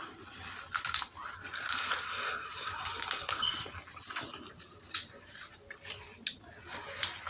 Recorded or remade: recorded